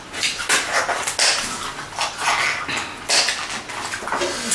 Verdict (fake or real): real